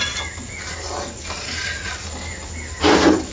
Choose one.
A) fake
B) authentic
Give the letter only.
B